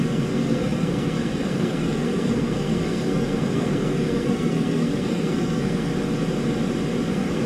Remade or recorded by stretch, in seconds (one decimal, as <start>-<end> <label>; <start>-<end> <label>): 0.0-5.9 remade; 5.9-7.1 recorded; 7.1-7.5 remade